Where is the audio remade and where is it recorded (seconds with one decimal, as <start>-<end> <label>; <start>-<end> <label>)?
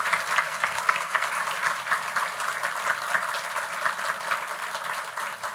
0.0-0.4 recorded; 0.4-1.3 remade; 1.3-5.5 recorded